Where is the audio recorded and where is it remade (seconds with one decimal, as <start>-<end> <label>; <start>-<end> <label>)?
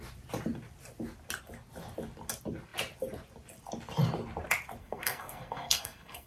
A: 0.0-4.8 recorded; 4.8-6.3 remade